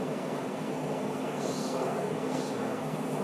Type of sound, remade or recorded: remade